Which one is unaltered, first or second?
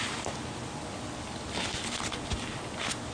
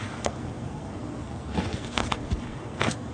first